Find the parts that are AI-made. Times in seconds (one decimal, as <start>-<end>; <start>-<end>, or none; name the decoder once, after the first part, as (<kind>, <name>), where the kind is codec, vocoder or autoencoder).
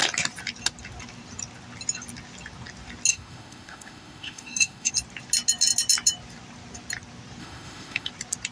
3.1-4.9 (autoencoder, DAC-VAE); 7.4-8.1